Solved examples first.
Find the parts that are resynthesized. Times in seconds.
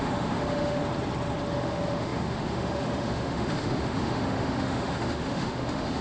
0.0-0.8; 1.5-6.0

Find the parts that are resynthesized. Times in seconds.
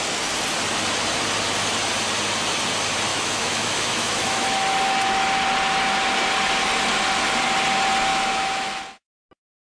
3.1-5.3; 8.1-8.8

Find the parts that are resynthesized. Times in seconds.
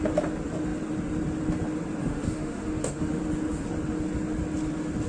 2.0-3.2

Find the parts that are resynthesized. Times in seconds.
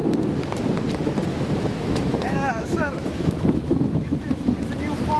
1.3-4.4